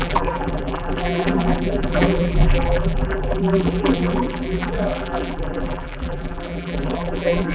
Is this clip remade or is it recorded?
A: remade